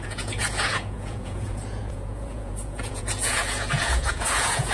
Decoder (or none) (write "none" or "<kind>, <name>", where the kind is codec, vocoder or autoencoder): vocoder, Vocos